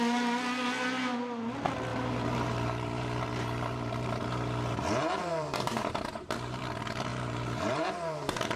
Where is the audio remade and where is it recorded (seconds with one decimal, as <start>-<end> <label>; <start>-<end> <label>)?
0.0-1.9 recorded; 1.9-6.6 remade; 6.6-7.1 recorded; 7.1-8.6 remade